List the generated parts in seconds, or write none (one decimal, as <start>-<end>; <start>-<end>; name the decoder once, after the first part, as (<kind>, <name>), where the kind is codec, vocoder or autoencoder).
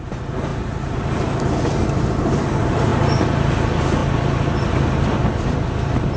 none